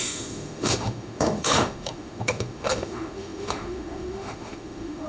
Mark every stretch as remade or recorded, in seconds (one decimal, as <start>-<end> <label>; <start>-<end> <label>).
0.0-5.1 remade